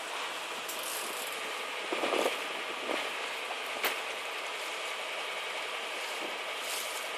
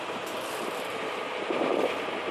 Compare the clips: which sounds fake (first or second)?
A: second